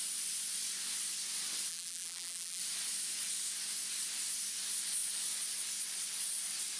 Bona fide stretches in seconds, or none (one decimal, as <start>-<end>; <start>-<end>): 0.0-1.7; 2.6-6.8